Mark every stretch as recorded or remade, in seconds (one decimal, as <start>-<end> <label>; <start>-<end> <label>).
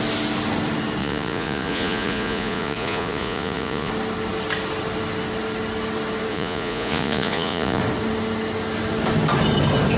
0.0-1.0 recorded; 1.0-3.9 remade; 3.9-6.3 recorded; 6.3-7.8 remade; 7.8-10.0 recorded